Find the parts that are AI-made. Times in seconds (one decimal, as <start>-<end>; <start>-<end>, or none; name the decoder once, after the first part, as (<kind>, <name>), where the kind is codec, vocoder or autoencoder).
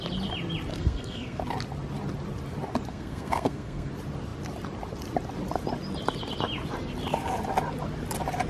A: 0.7-1.4 (codec, SNAC); 2.9-3.9